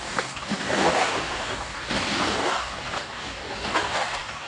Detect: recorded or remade remade